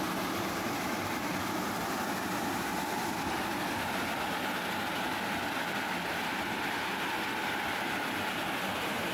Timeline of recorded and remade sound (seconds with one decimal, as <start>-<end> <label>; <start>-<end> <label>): 0.0-9.1 recorded